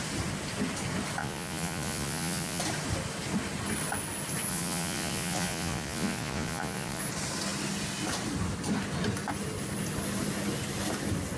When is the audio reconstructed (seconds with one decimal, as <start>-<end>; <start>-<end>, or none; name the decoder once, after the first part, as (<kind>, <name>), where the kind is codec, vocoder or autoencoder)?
1.2-2.6 (vocoder, Vocos); 4.5-7.0